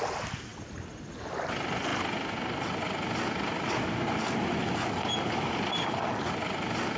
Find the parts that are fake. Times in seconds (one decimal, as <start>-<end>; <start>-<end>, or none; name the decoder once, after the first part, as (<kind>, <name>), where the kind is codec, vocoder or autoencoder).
none